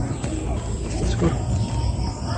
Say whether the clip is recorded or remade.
recorded